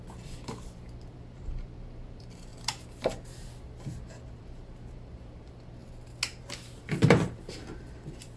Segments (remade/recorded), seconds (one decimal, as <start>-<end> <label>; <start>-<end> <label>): 0.0-2.5 remade; 2.5-3.6 recorded; 3.6-5.8 remade; 5.8-6.8 recorded; 6.8-8.4 remade